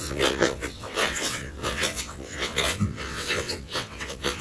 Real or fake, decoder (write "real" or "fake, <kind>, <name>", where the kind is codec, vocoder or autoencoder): fake, vocoder, WaveNeXt